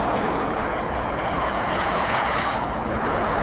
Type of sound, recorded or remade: remade